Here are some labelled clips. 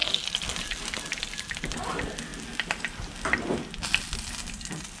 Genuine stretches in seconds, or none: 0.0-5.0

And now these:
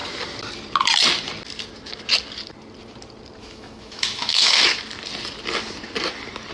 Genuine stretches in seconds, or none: 0.0-3.4; 4.8-6.5

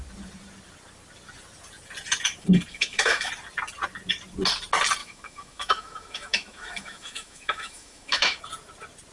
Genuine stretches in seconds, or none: 0.0-2.7; 3.3-5.0; 8.4-9.1

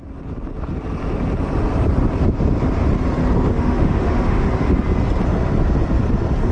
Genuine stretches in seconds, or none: 0.0-3.5; 4.5-6.5

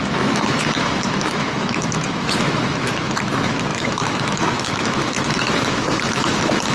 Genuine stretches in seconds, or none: none

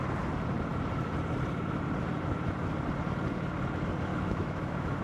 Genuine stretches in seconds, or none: 0.0-4.1